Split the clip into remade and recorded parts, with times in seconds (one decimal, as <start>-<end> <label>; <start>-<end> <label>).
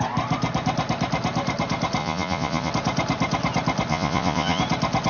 0.0-2.0 recorded; 2.0-2.7 remade; 2.7-3.9 recorded; 3.9-4.6 remade; 4.6-5.1 recorded